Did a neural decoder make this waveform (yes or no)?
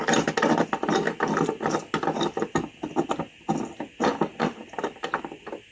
no